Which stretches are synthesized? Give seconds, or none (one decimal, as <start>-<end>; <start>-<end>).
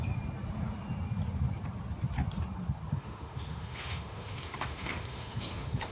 2.9-5.9